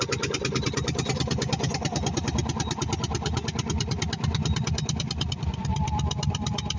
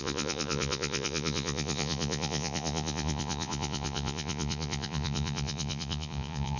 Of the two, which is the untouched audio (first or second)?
first